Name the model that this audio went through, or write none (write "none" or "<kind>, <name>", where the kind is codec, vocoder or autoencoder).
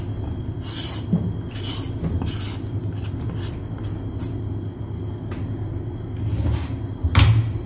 none